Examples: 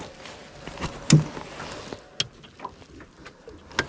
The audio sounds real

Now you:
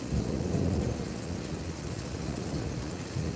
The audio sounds fake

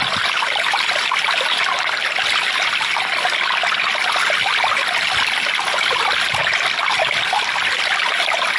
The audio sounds real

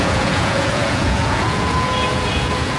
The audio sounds fake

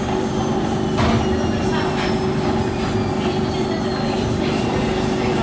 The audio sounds real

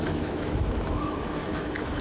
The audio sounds fake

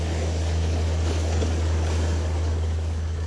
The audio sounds fake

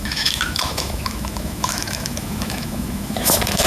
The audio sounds fake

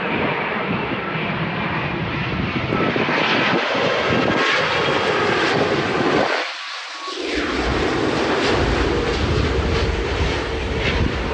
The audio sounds fake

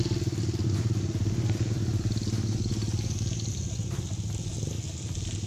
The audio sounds real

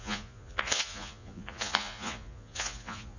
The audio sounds fake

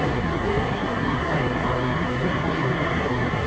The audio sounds fake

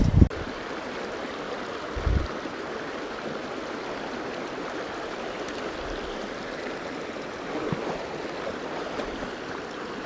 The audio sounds real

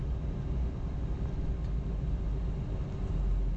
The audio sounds real